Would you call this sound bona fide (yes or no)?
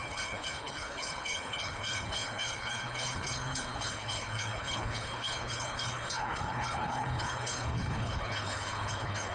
no